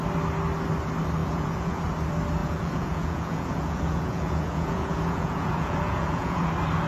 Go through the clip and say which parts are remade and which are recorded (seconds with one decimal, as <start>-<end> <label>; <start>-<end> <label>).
0.0-1.2 recorded; 1.2-1.8 remade; 1.8-2.4 recorded; 2.4-6.5 remade; 6.5-6.9 recorded